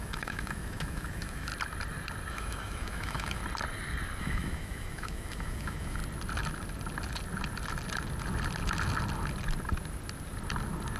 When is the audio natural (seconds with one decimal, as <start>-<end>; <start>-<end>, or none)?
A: 1.5-2.3; 3.4-4.2; 6.0-11.0